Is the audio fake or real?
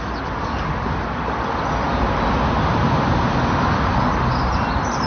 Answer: real